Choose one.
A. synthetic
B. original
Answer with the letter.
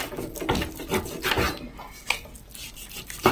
B